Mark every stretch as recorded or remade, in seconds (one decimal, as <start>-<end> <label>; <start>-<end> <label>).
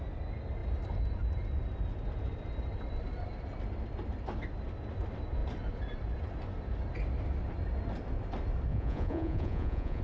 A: 0.0-8.7 recorded; 8.7-10.0 remade